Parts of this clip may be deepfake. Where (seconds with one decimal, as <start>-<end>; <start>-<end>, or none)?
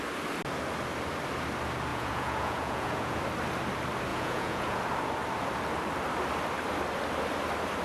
1.9-3.2; 4.1-4.8